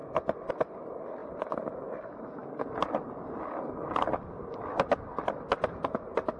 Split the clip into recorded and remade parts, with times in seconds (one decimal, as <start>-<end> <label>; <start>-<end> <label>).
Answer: 0.0-6.4 recorded